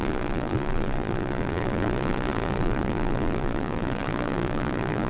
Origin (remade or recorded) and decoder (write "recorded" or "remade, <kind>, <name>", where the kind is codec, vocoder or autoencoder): remade, vocoder, Vocos